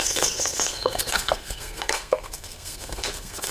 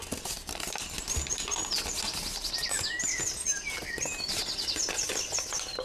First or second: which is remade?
first